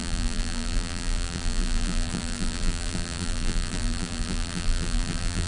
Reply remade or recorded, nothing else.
remade